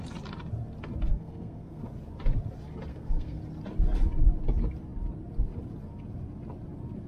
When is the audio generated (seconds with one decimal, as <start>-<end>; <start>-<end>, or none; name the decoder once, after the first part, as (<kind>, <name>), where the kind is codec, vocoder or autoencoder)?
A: 1.1-1.8 (codec, SNAC); 2.9-3.4